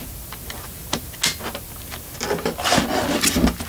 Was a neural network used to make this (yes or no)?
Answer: no